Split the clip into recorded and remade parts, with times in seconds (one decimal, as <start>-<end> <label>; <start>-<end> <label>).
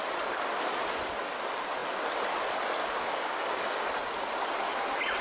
0.0-2.8 recorded; 2.8-3.8 remade; 3.8-5.2 recorded